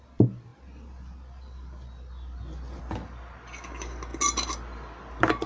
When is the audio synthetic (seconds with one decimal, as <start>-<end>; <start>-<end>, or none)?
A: none